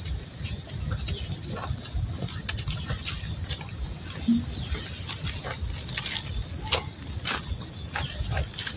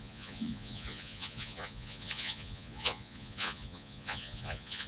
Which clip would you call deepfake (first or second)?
second